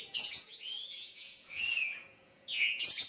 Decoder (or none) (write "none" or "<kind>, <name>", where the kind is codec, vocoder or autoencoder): vocoder, Vocos